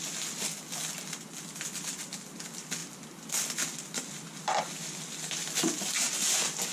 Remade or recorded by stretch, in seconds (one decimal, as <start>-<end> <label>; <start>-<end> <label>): 0.0-6.7 recorded